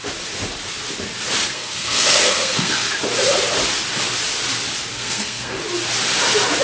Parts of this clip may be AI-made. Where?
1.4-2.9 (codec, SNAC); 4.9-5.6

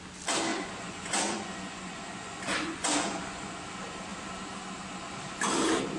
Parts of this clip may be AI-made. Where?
0.5-3.6 (vocoder, Vocos)

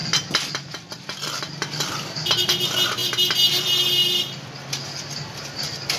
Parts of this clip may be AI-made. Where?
0.0-1.4 (vocoder, BigVGAN v2)